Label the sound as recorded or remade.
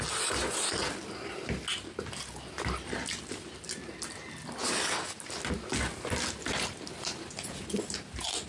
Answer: recorded